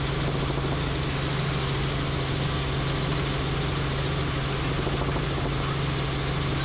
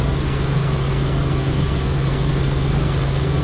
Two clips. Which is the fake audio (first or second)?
second